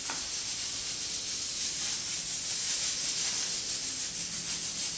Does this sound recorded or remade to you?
recorded